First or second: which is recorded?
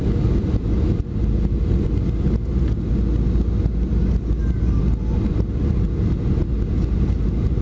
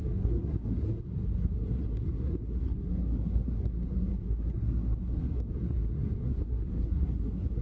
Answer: first